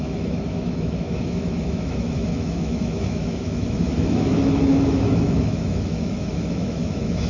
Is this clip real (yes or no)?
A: no